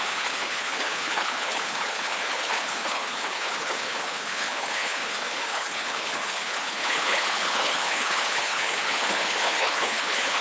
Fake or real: fake